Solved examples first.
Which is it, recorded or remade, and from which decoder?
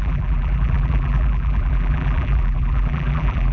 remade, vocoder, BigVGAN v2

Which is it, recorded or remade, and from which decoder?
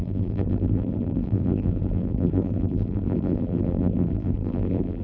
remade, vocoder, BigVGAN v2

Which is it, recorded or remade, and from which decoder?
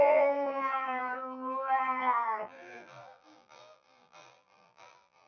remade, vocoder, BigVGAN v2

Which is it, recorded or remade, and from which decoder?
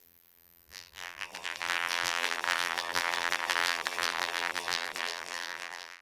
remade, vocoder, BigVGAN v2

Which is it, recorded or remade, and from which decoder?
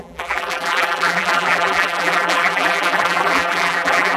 remade, vocoder, BigVGAN v2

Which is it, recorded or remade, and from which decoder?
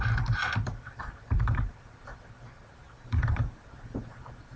remade, vocoder, BigVGAN v2